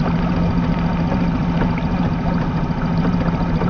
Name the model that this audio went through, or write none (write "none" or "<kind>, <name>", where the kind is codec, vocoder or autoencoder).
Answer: none